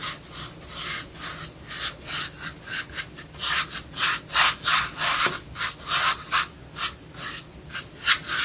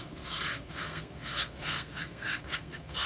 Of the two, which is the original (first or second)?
first